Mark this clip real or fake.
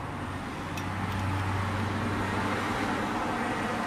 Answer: real